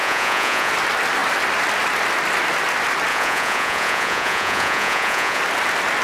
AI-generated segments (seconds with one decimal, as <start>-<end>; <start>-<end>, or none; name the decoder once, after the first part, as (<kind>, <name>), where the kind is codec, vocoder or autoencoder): 0.0-0.7 (vocoder, Vocos); 3.1-5.4